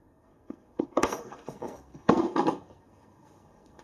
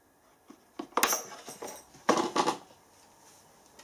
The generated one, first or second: first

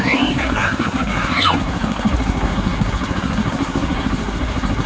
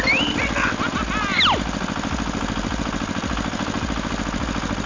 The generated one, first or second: first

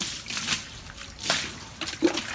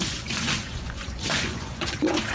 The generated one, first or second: second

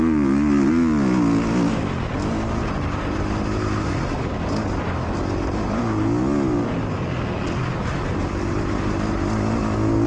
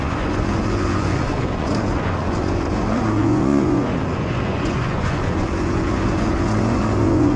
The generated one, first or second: second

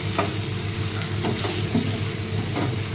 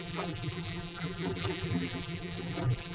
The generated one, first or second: second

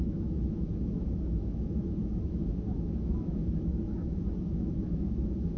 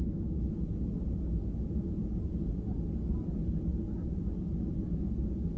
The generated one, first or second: first